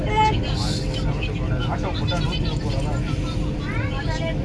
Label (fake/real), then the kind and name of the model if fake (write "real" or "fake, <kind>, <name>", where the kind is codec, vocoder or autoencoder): real